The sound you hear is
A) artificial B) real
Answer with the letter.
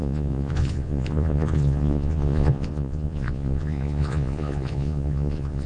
A